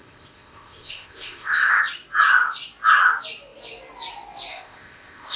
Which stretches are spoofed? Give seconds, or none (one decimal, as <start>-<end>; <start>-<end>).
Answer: 0.0-1.8; 4.5-5.4